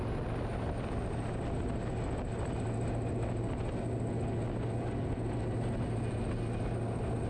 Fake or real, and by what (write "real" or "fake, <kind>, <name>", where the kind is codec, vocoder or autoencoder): real